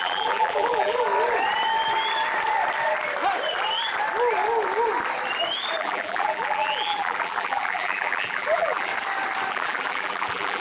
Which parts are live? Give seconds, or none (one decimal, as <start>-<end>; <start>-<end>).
1.1-5.8; 8.9-9.5